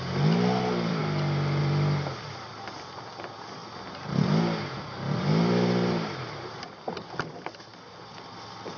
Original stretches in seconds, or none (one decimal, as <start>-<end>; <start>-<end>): 3.6-5.4